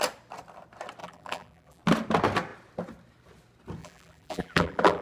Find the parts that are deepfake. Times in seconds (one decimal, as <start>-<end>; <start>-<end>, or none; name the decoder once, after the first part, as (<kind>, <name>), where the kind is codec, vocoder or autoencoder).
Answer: 1.0-1.8 (vocoder, BigVGAN v2); 3.8-5.0